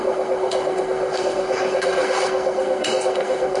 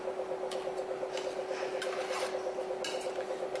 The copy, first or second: first